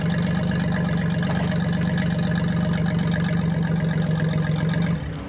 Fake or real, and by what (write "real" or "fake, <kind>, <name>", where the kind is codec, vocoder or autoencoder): real